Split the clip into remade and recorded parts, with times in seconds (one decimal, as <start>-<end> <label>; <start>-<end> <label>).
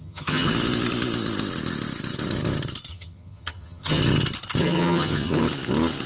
0.0-0.5 remade; 0.5-2.9 recorded; 2.9-4.0 remade; 4.0-4.6 recorded; 4.6-5.4 remade; 5.4-6.1 recorded